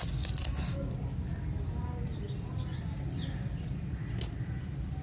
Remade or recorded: recorded